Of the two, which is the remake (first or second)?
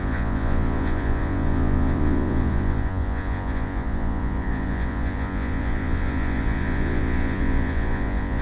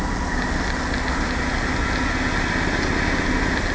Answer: first